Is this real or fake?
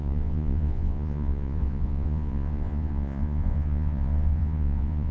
fake